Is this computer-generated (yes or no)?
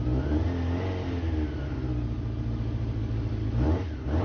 no